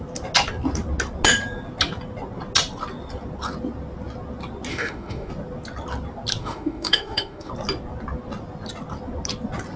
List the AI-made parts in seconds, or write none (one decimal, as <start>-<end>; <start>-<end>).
4.7-5.3; 6.4-7.5

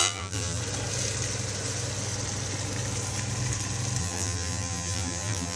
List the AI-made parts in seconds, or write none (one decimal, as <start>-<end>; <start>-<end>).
0.0-0.6; 4.0-5.6

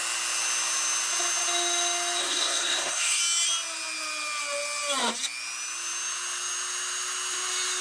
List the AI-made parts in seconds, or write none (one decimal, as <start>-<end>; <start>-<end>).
2.2-3.2

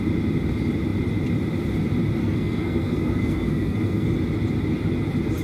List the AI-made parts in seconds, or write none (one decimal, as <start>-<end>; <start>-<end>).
2.2-4.1

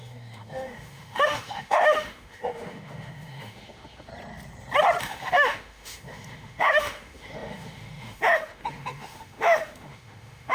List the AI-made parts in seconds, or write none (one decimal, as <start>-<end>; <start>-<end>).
0.0-4.1; 5.0-10.5

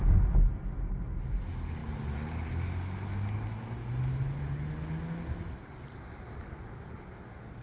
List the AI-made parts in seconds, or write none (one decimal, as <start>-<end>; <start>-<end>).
none

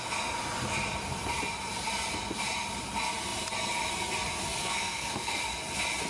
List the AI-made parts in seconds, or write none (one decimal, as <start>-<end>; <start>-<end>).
4.6-5.4